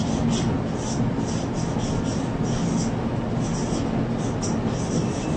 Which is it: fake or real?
real